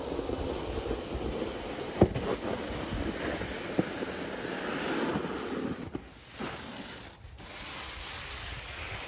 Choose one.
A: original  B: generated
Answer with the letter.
A